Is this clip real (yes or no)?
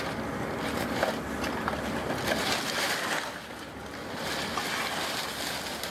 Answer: yes